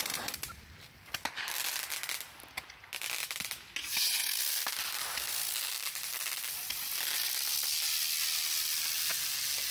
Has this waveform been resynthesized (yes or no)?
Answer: no